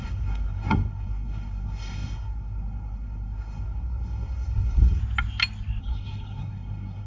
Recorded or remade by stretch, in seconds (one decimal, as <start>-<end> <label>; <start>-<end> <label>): 0.0-5.0 remade; 5.0-5.8 recorded; 5.8-7.1 remade